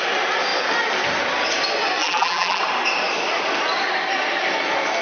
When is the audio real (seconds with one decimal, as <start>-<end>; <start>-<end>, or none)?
0.0-2.0; 2.6-5.0